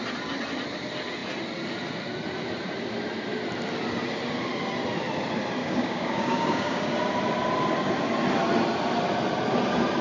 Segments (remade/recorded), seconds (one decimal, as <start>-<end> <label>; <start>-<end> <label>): 0.0-5.6 recorded; 5.6-6.9 remade; 6.9-10.0 recorded